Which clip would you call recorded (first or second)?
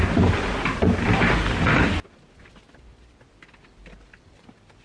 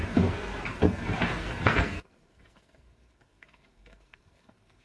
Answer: first